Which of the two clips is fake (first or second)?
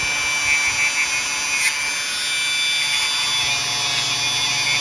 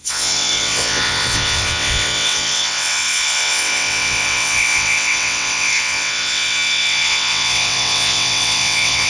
second